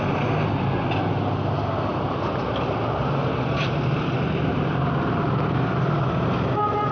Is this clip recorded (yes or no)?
yes